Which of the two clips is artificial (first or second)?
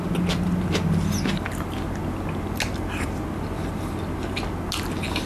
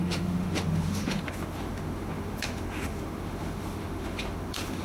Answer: second